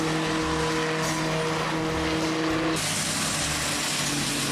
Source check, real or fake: real